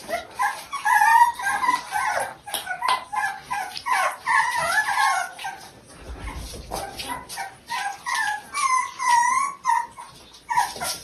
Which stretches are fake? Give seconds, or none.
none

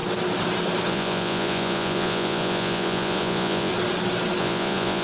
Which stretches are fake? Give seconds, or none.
0.9-3.7 (vocoder, Vocos); 4.4-5.0

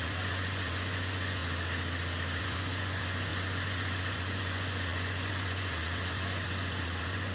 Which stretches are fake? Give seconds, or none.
0.0-1.4 (vocoder, Vocos); 2.4-7.3

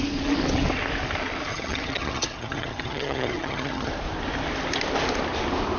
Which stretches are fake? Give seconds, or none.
1.5-3.9 (vocoder, HiFi-GAN)